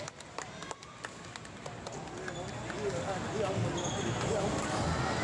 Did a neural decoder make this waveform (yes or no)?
no